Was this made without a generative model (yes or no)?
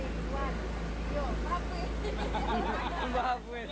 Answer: yes